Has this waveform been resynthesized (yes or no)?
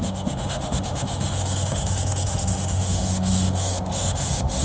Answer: yes